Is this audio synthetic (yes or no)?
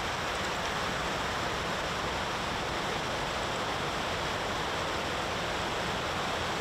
no